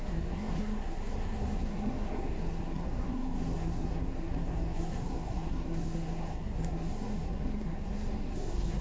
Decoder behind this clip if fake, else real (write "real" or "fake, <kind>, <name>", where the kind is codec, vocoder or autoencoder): fake, codec, SNAC